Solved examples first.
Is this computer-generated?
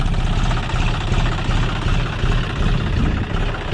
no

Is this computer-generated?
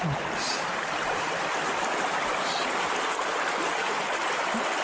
no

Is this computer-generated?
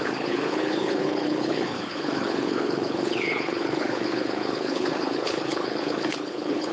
yes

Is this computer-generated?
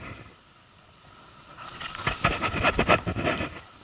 yes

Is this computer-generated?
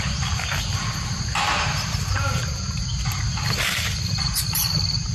yes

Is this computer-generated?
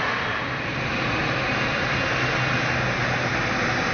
no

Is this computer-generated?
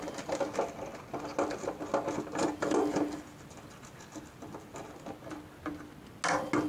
no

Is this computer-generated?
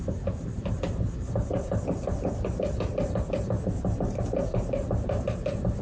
no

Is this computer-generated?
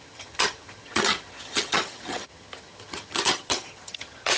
yes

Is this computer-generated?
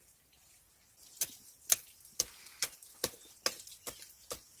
no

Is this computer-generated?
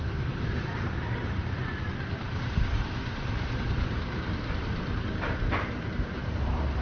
yes